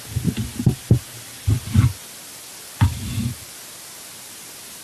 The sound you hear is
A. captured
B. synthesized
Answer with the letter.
A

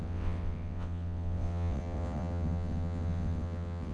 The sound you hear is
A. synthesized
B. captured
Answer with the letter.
A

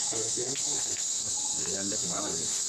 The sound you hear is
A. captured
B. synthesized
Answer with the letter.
B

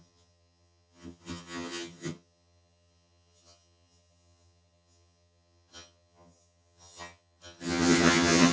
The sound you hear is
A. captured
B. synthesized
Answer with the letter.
B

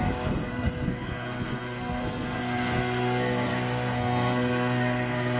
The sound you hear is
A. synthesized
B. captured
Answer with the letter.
A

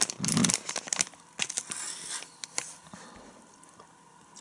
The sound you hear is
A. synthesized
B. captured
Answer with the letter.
B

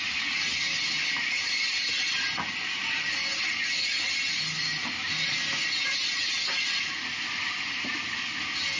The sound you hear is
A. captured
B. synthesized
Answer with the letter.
A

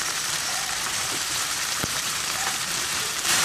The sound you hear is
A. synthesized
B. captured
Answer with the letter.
A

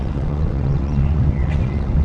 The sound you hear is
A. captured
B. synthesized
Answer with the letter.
B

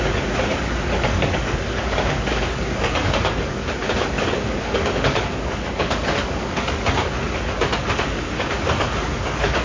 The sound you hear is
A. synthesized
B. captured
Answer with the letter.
A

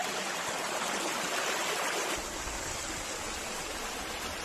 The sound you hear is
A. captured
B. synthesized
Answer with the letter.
A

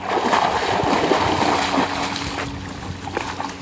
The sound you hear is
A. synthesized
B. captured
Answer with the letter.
B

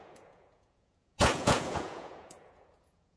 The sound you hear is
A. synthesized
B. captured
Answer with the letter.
A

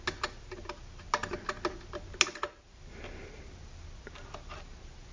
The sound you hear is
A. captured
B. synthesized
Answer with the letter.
A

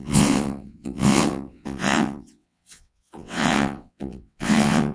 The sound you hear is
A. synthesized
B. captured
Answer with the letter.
A